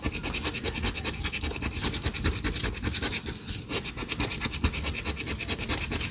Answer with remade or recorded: recorded